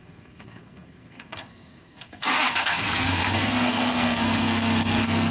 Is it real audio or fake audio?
fake